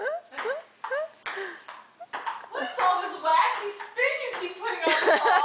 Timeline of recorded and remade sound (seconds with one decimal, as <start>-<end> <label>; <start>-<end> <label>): 0.0-5.4 recorded